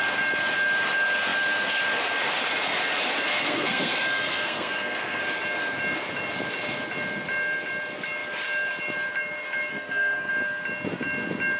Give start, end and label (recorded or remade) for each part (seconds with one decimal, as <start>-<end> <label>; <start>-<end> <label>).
0.0-3.3 recorded; 3.3-5.2 remade; 5.2-9.7 recorded; 9.7-10.3 remade; 10.3-11.6 recorded